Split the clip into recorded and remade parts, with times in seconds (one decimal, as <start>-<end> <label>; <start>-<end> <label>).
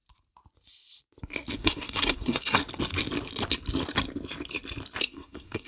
0.0-1.6 recorded; 1.6-2.6 remade; 2.6-5.0 recorded; 5.0-5.7 remade